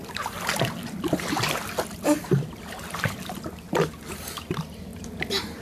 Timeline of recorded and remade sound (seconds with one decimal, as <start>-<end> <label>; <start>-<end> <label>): 0.0-4.9 recorded; 4.9-5.6 remade